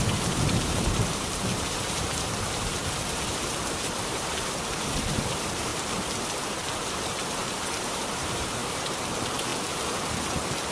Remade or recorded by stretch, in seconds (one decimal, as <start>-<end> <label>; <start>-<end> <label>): 0.0-5.7 remade; 5.7-7.1 recorded; 7.1-9.5 remade; 9.5-10.7 recorded